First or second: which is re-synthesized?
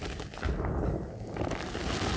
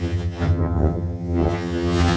second